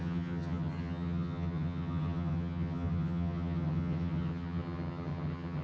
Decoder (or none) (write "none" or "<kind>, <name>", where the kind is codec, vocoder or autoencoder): vocoder, HiFi-GAN